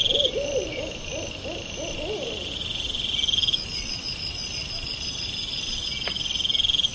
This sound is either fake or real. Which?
real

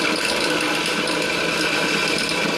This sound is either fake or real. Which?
real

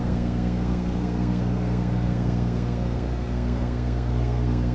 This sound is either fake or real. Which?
fake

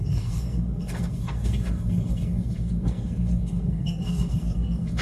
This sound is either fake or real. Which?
fake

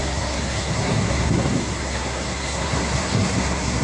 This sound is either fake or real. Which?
fake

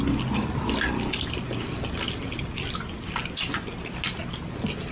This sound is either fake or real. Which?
real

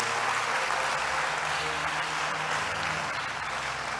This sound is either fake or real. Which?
real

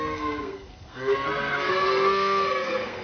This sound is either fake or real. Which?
fake